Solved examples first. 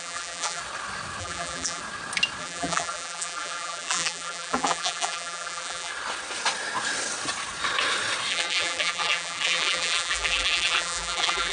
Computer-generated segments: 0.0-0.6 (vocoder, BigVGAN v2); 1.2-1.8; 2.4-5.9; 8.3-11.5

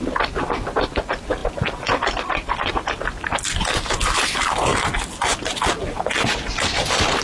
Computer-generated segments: none

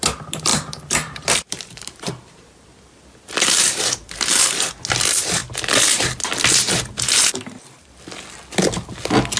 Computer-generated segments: 0.5-2.6 (vocoder, BigVGAN v2)

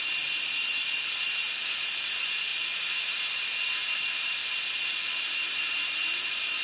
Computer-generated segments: none

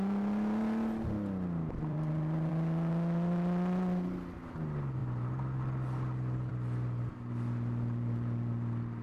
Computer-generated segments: 1.9-2.5 (vocoder, BigVGAN v2)

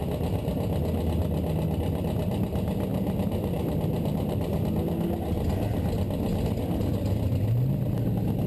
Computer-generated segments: 2.9-4.7 (vocoder, BigVGAN v2)

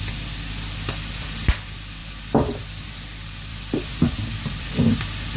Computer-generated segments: 2.0-2.9 (vocoder, BigVGAN v2); 3.5-4.8

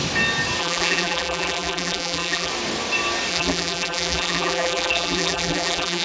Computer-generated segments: 0.6-2.5 (vocoder, BigVGAN v2); 3.3-6.0